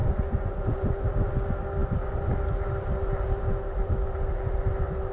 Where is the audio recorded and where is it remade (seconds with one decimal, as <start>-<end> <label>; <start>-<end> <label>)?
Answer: 0.0-0.9 remade; 0.9-5.1 recorded